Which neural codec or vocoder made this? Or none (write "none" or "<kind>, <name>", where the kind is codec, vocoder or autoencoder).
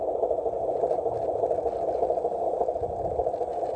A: none